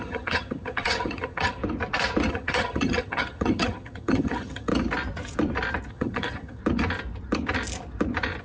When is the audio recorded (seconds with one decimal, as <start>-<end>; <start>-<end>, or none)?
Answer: 1.6-2.3; 4.7-5.9; 6.6-8.4